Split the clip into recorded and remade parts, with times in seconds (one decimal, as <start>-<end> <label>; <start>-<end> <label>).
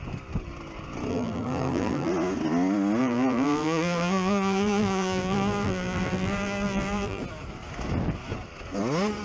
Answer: 0.0-1.1 recorded; 1.1-2.1 remade; 2.1-3.0 recorded; 3.0-7.2 remade; 7.2-9.2 recorded